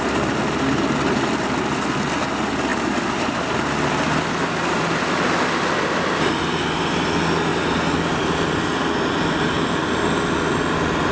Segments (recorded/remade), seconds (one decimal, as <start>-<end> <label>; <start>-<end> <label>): 0.0-11.1 recorded